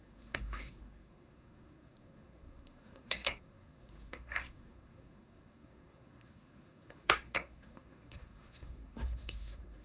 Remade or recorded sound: remade